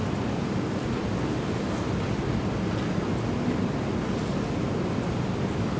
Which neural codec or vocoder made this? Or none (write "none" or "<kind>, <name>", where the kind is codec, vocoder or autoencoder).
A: none